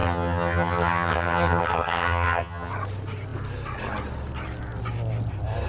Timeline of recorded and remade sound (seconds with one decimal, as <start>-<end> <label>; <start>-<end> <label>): 0.0-2.7 remade; 2.7-5.7 recorded